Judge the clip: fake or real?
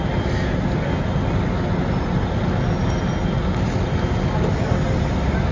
real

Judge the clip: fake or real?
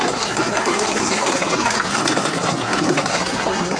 fake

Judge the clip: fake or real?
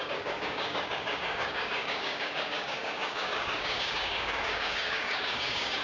fake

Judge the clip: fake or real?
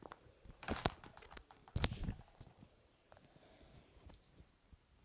fake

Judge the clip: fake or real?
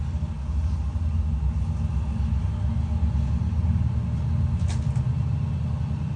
real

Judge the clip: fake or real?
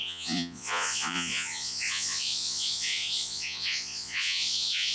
fake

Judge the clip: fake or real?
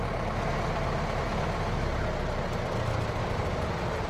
real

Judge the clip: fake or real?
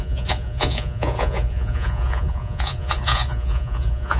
fake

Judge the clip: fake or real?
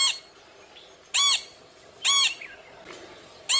real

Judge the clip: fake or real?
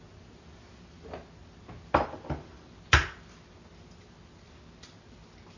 real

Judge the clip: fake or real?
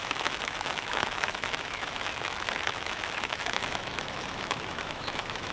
fake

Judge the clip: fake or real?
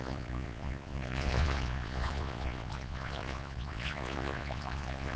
fake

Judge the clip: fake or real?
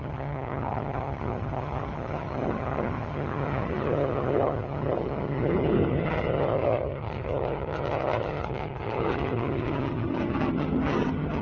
fake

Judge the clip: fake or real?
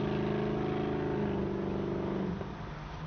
real